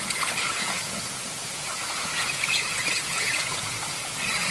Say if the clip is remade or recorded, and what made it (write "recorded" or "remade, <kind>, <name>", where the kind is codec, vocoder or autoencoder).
remade, vocoder, Vocos